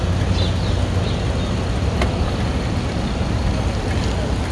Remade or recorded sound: recorded